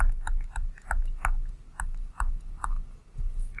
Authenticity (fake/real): real